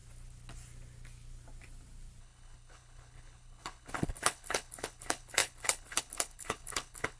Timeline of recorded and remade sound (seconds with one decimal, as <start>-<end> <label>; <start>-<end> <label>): 0.0-2.2 recorded; 2.2-7.2 remade